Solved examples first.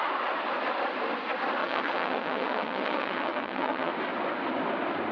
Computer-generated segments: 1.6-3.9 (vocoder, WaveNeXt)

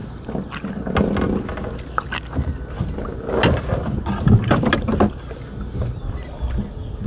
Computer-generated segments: none

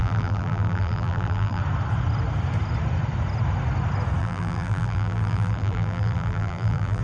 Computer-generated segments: 0.0-1.6 (vocoder, BigVGAN v2); 4.2-7.0

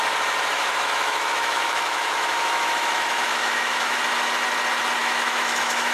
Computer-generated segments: 0.5-4.0 (autoencoder, DAC-VAE); 5.0-5.9

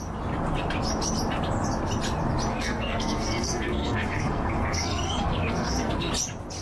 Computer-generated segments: 2.5-6.1 (codec, SNAC)

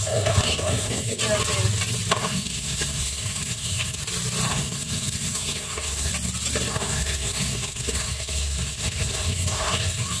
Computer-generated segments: 0.0-1.2 (codec, SNAC); 2.1-4.0; 4.5-6.1; 6.7-10.2

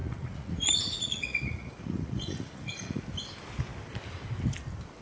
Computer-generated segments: 0.0-3.0 (vocoder, Vocos)

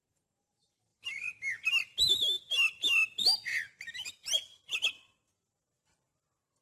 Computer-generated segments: none